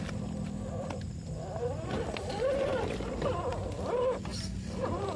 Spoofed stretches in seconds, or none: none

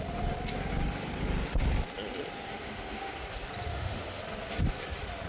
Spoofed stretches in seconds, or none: 2.5-3.1 (autoencoder, DAC-VAE); 3.7-4.2

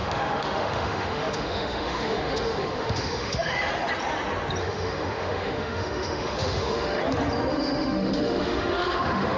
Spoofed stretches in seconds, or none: 0.0-3.7 (autoencoder, DAC-VAE); 4.6-7.0; 7.5-9.4

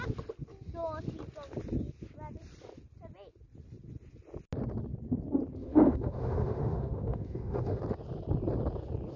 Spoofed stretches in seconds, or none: 5.6-7.8 (autoencoder, DAC-VAE)

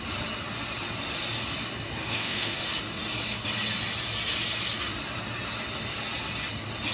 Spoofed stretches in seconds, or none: 2.0-2.6 (autoencoder, DAC-VAE)

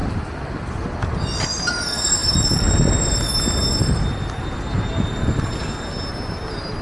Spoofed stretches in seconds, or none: none

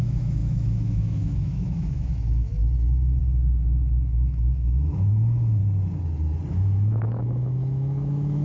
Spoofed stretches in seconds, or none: 0.0-5.6 (autoencoder, DAC-VAE); 6.5-8.4